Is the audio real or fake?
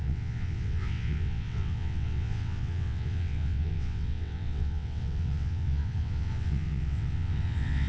fake